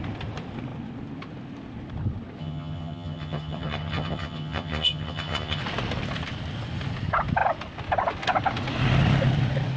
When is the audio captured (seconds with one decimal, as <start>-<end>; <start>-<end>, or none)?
0.0-2.4; 5.6-9.8